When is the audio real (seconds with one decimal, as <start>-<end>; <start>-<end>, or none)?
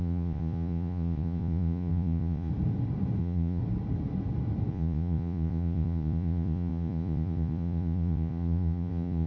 2.5-3.2; 3.6-4.7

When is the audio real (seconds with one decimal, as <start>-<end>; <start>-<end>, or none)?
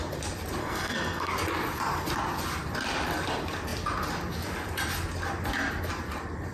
0.0-0.6; 1.3-6.5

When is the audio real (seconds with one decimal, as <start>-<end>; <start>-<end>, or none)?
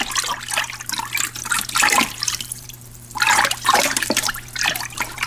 0.0-1.4; 4.3-5.3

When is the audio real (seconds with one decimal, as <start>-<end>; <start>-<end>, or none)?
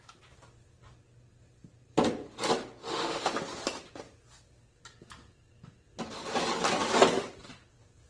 0.0-2.8; 3.3-8.1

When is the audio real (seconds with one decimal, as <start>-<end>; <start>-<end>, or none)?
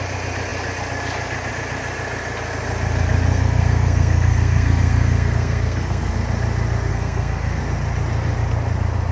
0.0-3.3; 6.1-6.9; 7.6-9.1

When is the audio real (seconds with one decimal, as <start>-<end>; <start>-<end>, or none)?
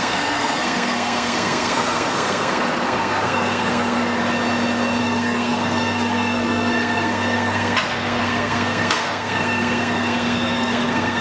4.2-5.0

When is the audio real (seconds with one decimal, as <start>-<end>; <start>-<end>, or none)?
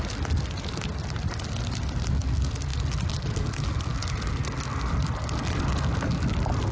0.0-6.7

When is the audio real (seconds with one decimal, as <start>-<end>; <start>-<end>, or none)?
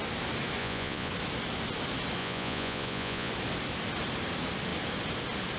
0.0-0.6; 1.1-2.2; 3.3-5.6